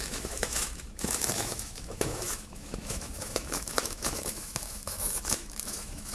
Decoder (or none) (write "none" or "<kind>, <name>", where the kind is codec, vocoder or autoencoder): autoencoder, DAC-VAE